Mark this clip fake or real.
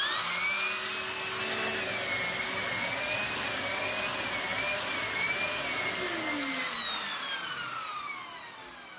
real